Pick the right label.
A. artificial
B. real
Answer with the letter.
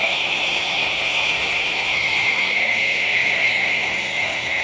A